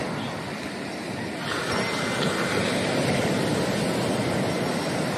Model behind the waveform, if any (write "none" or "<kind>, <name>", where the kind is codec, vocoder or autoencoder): none